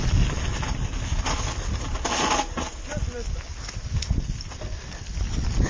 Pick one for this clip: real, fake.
real